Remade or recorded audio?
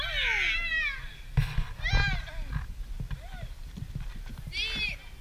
recorded